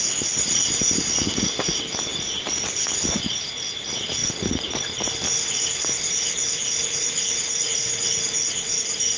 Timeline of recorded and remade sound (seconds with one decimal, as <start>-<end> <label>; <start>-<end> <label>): 0.0-9.2 recorded